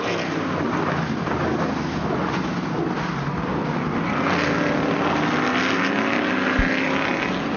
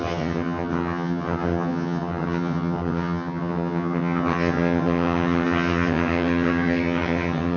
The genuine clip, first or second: first